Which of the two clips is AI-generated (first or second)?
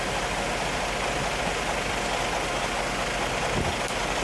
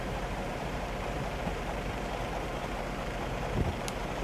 second